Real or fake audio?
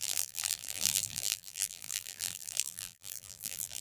fake